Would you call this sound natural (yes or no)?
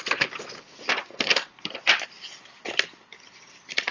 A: no